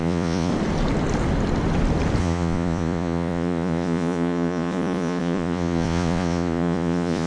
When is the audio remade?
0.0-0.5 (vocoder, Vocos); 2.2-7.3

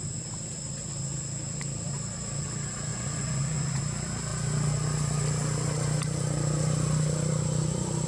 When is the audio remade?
2.9-3.8 (vocoder, Vocos)